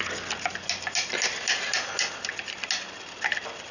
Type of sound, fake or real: real